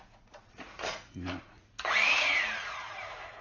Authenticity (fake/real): fake